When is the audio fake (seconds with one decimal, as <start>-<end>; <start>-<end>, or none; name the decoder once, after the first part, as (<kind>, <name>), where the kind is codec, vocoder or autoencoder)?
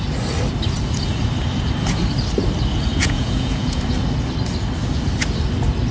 2.9-3.8 (vocoder, Vocos)